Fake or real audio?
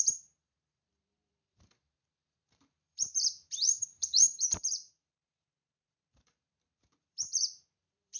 fake